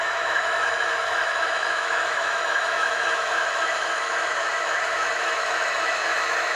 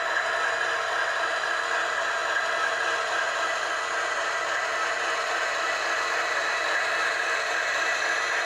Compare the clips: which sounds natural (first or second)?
second